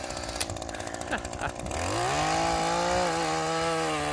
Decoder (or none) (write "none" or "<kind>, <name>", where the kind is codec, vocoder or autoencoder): none